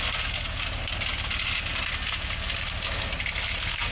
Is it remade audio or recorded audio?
recorded